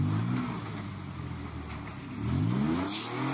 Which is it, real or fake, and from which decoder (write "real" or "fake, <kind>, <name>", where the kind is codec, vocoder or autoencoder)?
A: real